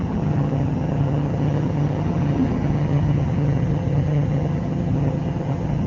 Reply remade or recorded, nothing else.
remade